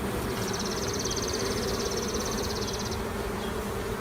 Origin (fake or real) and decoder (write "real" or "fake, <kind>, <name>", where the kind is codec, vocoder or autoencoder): real